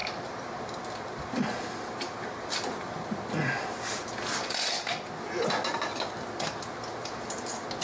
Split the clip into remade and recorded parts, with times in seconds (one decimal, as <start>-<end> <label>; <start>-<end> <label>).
0.0-7.8 recorded